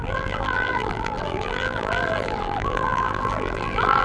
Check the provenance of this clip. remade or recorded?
remade